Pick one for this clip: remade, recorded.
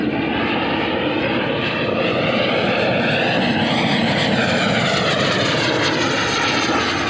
recorded